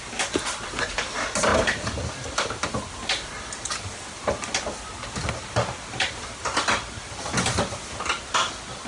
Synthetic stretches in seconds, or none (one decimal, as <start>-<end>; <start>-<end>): 1.5-2.8